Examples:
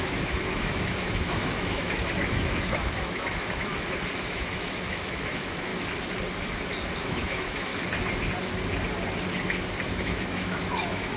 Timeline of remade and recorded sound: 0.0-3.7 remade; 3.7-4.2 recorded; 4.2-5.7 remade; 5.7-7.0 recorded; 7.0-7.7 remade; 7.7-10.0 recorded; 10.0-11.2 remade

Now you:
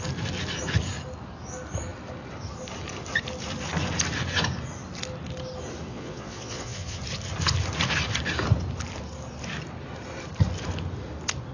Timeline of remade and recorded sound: 0.0-5.9 recorded; 5.9-7.0 remade; 7.0-11.5 recorded

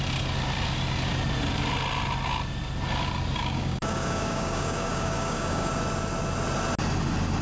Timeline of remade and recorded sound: 0.0-3.4 recorded; 3.4-5.7 remade; 5.7-7.4 recorded

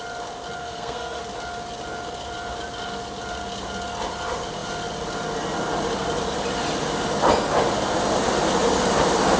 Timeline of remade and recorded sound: 0.0-0.6 recorded; 0.6-1.2 remade; 1.2-9.4 recorded